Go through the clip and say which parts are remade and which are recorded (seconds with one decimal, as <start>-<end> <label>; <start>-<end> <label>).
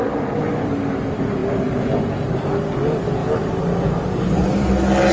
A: 0.0-5.1 recorded